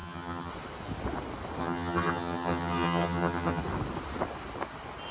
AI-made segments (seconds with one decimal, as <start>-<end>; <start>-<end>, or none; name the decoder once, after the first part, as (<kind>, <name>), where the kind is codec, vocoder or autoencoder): 0.0-0.5 (vocoder, HiFi-GAN); 1.6-3.6